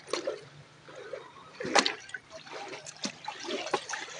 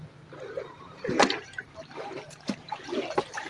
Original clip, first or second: first